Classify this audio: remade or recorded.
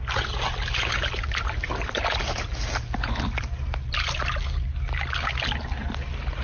recorded